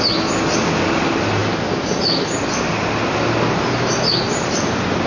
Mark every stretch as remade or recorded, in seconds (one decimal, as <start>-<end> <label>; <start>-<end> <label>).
0.0-5.1 recorded